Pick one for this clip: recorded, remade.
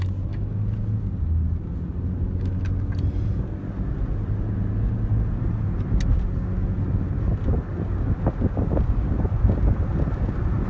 recorded